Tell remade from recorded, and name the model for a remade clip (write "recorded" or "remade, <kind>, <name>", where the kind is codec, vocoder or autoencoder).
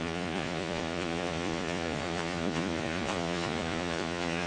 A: remade, vocoder, Vocos